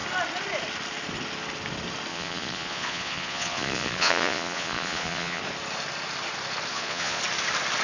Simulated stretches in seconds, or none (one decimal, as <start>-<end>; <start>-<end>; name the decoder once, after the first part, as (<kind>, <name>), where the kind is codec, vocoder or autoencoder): 2.1-5.4 (vocoder, Vocos); 6.7-7.2